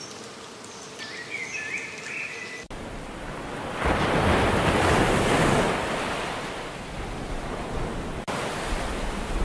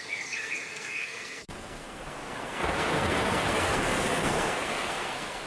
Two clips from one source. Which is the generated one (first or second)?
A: second